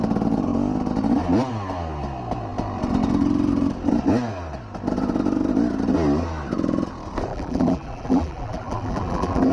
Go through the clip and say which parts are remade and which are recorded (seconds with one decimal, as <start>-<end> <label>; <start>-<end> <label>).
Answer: 0.0-7.3 recorded; 7.3-9.5 remade